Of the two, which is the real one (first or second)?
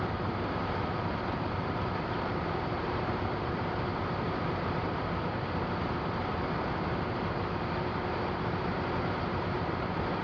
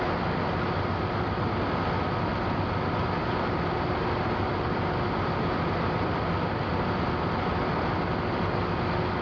second